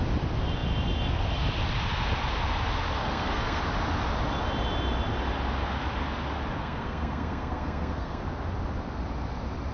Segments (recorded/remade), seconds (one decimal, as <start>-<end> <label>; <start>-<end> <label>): 0.0-3.0 recorded; 3.0-3.6 remade; 3.6-6.6 recorded; 6.6-8.2 remade; 8.2-9.7 recorded